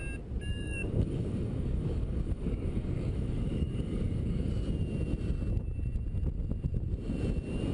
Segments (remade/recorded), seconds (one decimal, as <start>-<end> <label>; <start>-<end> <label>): 0.0-0.5 recorded; 0.5-4.5 remade; 4.5-7.7 recorded